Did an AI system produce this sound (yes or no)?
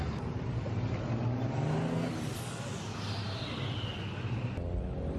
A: no